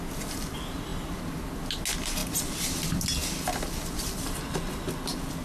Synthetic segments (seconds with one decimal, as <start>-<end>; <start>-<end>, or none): none